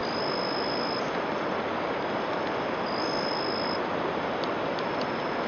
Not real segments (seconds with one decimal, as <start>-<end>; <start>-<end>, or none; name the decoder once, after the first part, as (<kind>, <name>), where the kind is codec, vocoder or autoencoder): none

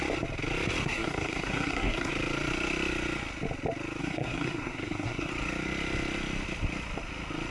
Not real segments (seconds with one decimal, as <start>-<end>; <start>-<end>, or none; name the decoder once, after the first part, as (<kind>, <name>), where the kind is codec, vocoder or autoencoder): 0.8-2.1 (codec, SNAC); 4.0-5.3